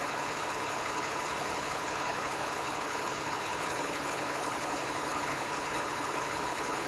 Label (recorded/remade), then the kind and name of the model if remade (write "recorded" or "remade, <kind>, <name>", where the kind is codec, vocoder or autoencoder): remade, codec, HILCodec